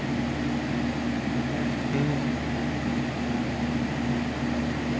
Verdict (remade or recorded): recorded